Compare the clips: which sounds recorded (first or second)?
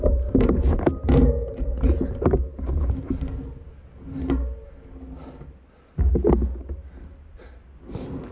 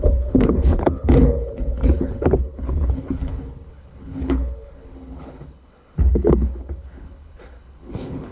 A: first